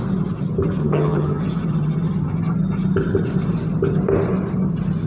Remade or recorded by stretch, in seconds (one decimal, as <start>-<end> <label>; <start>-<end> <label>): 0.0-0.8 recorded; 0.8-1.4 remade; 1.4-5.1 recorded